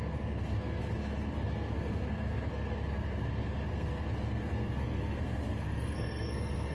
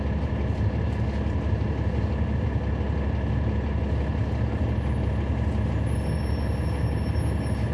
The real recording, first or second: second